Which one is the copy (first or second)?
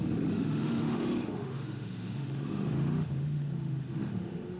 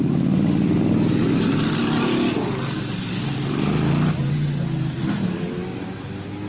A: first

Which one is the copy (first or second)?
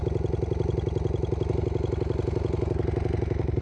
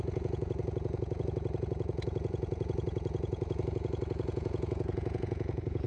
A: second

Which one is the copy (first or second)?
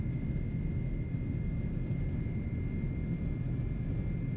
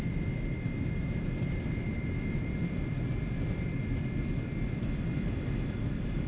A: second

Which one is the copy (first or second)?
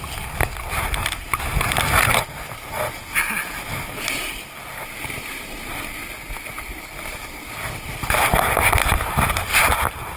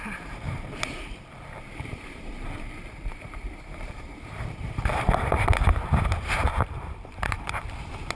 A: second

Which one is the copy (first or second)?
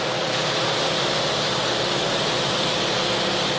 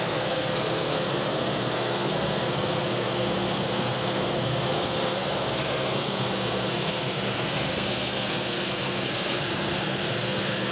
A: second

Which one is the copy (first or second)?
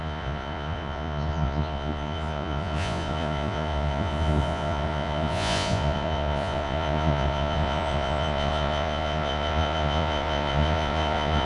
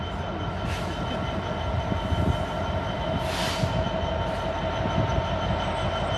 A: first